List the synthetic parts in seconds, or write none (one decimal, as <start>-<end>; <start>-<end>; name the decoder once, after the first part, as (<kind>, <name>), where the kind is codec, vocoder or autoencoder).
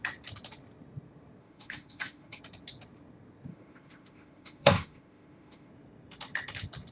1.4-2.4 (autoencoder, DAC-VAE); 3.5-5.7